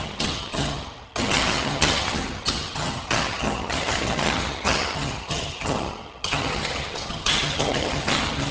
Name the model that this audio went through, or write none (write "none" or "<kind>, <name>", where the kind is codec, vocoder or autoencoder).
vocoder, HiFi-GAN